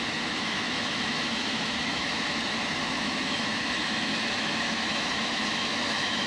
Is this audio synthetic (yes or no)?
yes